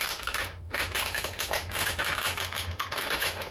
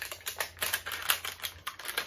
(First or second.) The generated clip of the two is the first